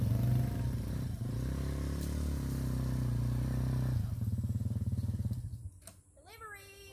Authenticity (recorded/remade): recorded